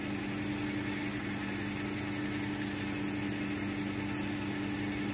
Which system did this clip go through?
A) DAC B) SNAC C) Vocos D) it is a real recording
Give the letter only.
D